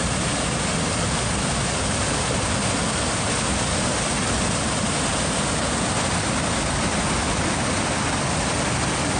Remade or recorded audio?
recorded